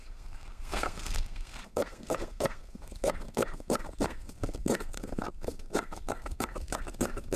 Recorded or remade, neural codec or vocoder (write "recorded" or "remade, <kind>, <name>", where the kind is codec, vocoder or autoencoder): remade, codec, SNAC